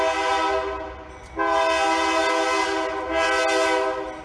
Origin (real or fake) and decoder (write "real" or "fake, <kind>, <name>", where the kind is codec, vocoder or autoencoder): real